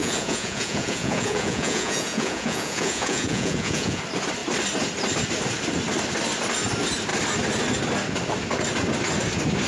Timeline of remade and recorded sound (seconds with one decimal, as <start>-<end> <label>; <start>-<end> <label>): 0.0-4.0 remade; 4.0-9.7 recorded